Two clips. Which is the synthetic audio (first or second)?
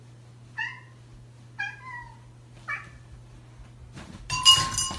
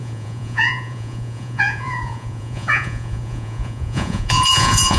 second